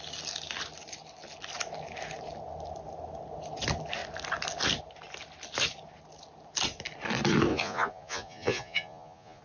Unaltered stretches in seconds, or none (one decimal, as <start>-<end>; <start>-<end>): 0.0-7.5